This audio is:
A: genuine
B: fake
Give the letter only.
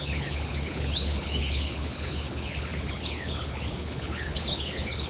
B